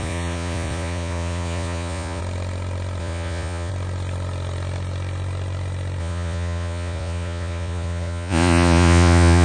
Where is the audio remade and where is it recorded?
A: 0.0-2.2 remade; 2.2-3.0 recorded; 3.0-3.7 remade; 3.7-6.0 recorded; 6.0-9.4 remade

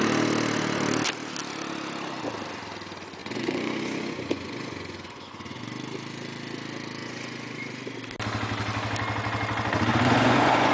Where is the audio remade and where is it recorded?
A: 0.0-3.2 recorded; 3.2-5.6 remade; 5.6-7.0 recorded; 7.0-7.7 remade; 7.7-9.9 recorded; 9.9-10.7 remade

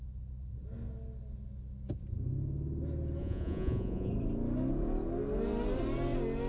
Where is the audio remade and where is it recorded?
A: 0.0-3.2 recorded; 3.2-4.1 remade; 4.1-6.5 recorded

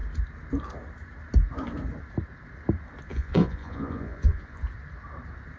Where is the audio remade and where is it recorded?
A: 0.0-3.1 recorded; 3.1-4.6 remade; 4.6-5.6 recorded

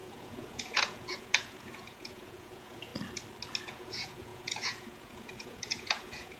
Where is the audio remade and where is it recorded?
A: 0.0-2.9 remade; 2.9-3.6 recorded; 3.6-6.4 remade

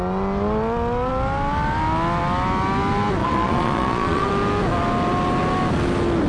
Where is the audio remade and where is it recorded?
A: 0.0-3.2 recorded; 3.2-4.3 remade; 4.3-6.3 recorded

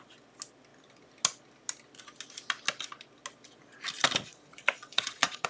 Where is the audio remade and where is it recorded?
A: 0.0-4.3 recorded; 4.3-5.5 remade